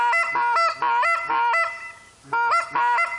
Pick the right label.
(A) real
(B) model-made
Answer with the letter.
A